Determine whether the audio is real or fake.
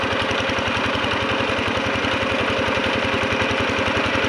fake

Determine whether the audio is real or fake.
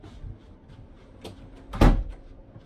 real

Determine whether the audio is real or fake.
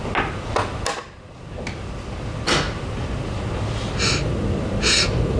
real